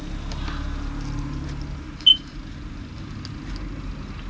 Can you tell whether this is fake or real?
real